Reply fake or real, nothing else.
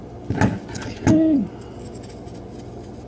real